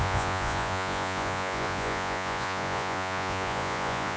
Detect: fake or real fake